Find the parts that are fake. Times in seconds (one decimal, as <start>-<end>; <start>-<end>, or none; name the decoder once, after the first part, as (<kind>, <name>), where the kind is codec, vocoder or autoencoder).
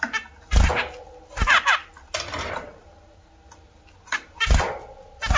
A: none